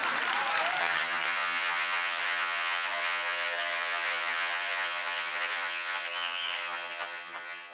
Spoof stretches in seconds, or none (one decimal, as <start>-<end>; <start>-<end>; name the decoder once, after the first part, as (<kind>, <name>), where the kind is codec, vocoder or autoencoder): 0.8-7.7 (vocoder, HiFi-GAN)